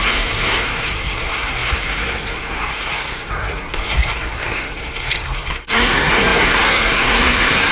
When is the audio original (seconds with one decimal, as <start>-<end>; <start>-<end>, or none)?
none